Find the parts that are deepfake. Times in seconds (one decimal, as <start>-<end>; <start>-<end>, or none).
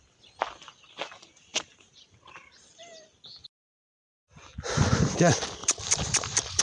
1.5-3.0; 5.6-6.6